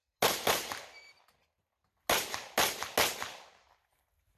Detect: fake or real real